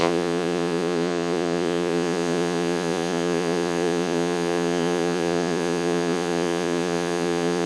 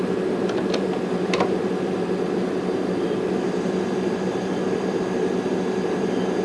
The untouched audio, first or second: second